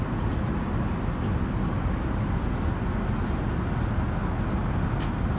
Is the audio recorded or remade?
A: recorded